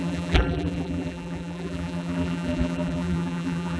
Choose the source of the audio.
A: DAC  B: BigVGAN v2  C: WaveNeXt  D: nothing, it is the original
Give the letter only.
B